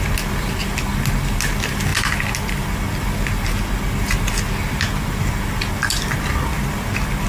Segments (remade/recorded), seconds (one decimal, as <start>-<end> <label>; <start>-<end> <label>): 0.0-7.3 recorded